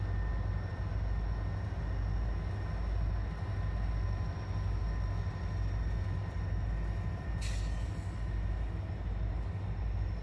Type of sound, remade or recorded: recorded